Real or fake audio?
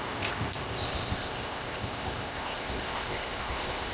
fake